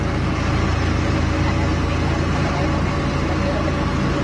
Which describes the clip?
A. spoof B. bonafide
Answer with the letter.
B